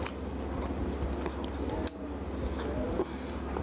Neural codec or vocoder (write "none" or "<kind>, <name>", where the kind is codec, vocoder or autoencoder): none